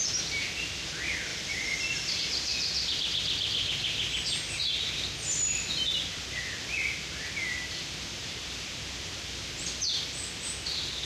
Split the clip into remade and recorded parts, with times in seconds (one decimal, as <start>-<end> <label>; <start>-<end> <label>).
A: 0.0-1.3 recorded; 1.3-2.2 remade; 2.2-11.1 recorded